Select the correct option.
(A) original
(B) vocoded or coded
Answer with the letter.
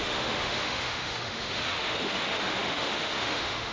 B